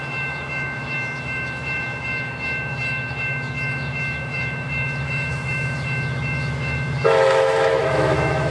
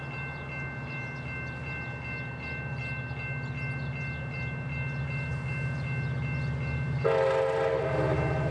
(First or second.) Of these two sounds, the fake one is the first